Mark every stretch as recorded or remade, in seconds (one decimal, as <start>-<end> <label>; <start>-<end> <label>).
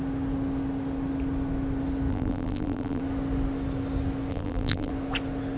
0.0-2.1 recorded; 2.1-3.0 remade; 3.0-4.3 recorded; 4.3-4.9 remade; 4.9-5.6 recorded